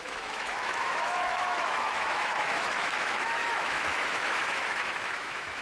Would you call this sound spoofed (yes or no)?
yes